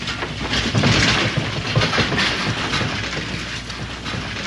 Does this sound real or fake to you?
real